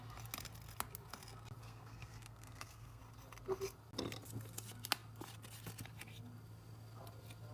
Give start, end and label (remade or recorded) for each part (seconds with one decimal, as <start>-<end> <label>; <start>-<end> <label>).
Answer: 0.0-1.6 recorded; 1.6-3.0 remade; 3.0-7.5 recorded